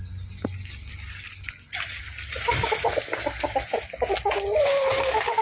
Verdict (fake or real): real